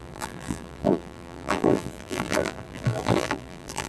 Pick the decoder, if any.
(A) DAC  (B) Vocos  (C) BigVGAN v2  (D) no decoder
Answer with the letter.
C